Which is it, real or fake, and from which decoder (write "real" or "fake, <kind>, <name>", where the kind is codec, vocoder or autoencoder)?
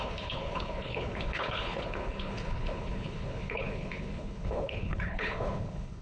fake, codec, HILCodec